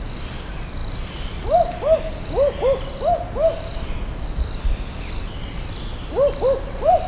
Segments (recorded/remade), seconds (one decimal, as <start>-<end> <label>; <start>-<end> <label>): 0.0-7.1 recorded